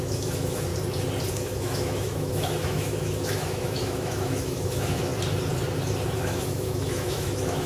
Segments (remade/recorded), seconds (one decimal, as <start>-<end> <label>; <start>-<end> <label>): 0.0-0.7 remade; 0.7-1.3 recorded; 1.3-5.1 remade; 5.1-6.2 recorded; 6.2-7.7 remade